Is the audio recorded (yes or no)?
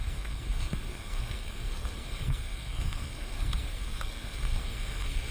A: no